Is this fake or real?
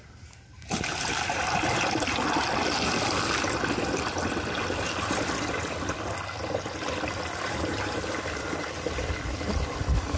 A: real